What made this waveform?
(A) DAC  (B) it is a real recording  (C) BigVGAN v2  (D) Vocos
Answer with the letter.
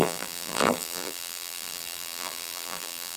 C